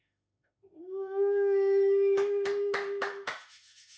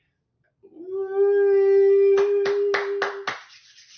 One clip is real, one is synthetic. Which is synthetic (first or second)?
first